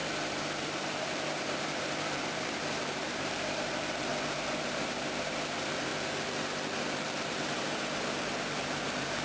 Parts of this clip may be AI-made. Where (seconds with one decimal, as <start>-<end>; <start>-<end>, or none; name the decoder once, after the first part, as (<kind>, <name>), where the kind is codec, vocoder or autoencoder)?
0.6-4.1 (vocoder, BigVGAN v2); 4.6-5.9; 6.8-9.2